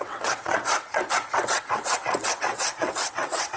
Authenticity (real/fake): fake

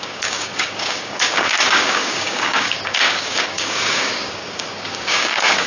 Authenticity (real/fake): fake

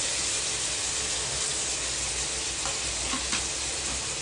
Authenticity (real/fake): real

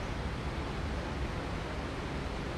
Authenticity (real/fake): real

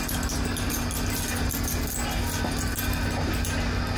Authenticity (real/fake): real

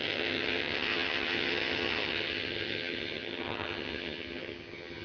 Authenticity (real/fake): fake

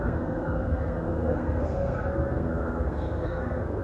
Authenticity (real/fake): fake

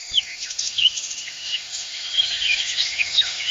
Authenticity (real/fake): fake